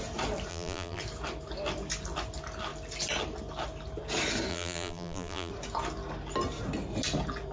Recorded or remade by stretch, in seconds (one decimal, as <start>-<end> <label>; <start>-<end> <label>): 0.0-0.5 recorded; 0.5-1.0 remade; 1.0-4.5 recorded; 4.5-5.5 remade; 5.5-7.5 recorded